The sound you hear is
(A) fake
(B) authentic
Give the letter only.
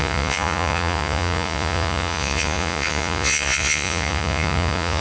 A